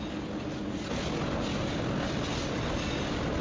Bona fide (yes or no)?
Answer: yes